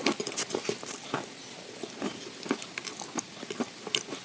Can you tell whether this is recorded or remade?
recorded